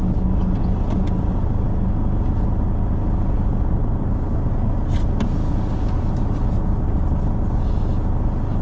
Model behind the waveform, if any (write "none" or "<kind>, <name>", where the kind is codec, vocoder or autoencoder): none